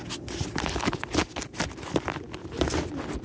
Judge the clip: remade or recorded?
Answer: recorded